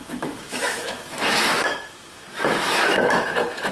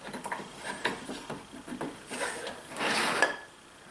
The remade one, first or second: first